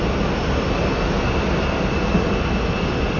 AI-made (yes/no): no